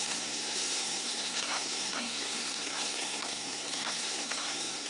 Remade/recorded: remade